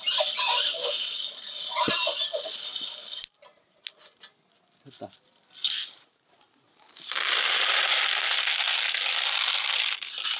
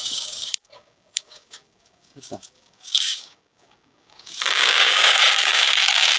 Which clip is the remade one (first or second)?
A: second